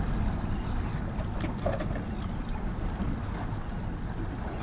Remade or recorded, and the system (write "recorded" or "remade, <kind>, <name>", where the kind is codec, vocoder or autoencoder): recorded